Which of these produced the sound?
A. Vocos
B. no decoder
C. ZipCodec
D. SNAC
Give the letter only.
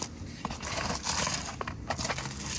B